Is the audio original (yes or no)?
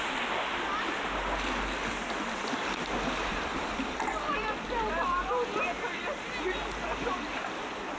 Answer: yes